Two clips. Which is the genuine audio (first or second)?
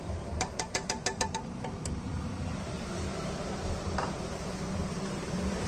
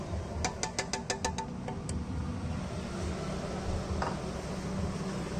second